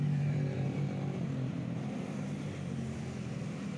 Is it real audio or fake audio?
fake